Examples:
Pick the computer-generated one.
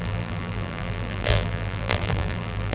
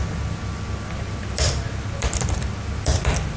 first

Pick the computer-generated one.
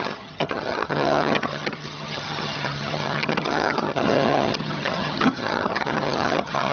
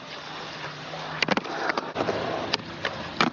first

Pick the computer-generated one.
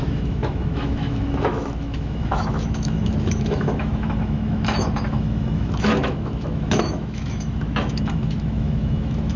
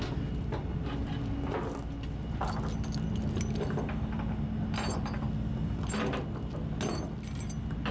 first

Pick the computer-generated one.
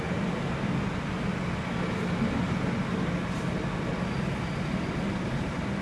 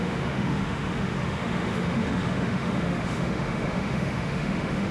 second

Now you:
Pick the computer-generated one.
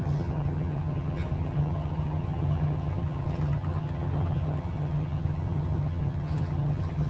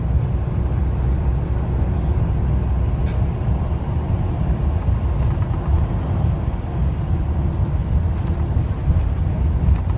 first